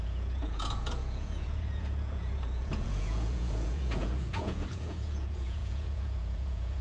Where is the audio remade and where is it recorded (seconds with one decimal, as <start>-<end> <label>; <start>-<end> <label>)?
0.0-6.8 remade